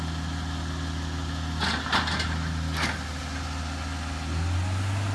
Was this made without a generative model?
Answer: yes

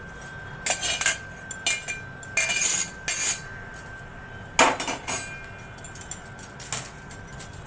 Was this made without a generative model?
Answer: yes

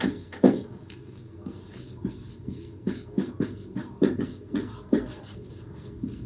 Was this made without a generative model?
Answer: no